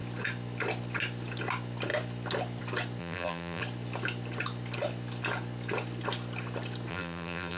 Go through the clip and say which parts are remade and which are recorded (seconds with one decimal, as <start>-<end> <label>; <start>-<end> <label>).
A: 0.0-3.0 recorded; 3.0-3.6 remade; 3.6-6.9 recorded; 6.9-7.6 remade